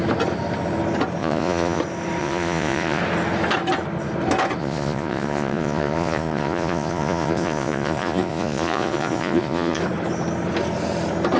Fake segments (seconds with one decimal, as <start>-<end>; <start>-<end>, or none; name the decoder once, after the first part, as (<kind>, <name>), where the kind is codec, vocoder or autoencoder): 1.2-1.8 (vocoder, Vocos); 2.2-3.0; 4.6-9.8